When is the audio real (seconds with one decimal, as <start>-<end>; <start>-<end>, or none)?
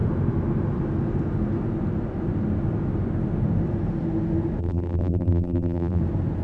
0.0-4.6; 6.0-6.4